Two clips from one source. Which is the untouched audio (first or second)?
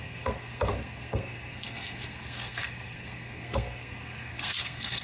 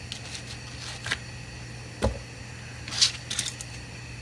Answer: second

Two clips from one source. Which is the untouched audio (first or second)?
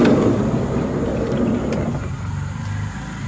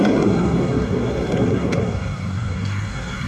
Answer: first